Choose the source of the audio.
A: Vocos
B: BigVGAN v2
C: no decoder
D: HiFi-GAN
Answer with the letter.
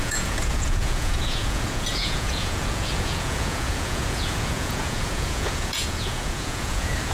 A